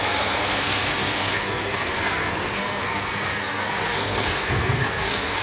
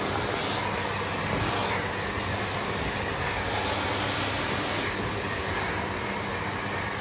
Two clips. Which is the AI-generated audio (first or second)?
first